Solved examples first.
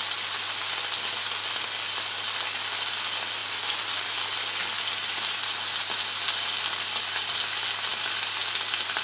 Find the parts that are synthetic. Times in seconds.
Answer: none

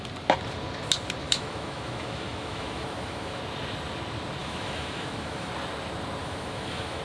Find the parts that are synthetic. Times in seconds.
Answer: 1.2-3.4 (autoencoder, DAC-VAE); 4.4-5.5; 6.2-7.0